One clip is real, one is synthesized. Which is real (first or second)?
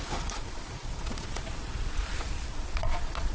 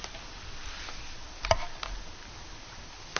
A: second